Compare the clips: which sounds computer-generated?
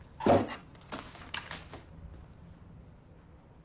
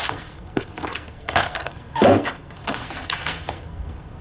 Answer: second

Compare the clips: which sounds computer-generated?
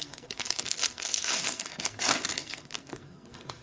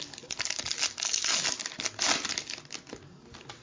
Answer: first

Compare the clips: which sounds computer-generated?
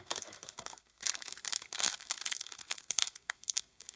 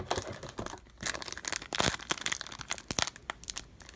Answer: first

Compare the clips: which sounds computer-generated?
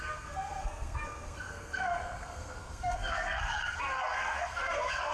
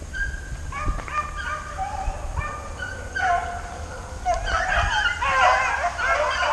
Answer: first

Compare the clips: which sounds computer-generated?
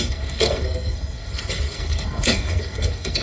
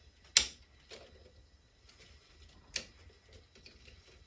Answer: first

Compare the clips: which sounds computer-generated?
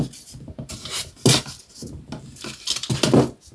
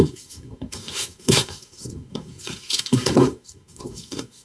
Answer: second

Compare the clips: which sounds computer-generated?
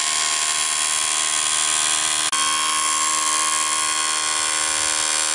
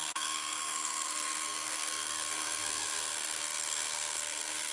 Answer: second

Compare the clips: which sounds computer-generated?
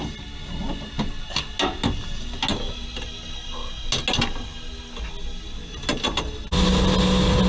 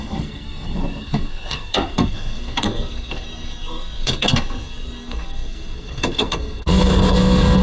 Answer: second